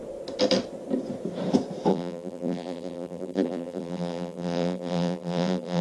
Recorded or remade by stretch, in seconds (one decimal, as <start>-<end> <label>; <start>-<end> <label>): 0.0-1.9 recorded; 1.9-5.8 remade